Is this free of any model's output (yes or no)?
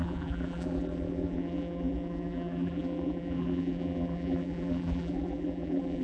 no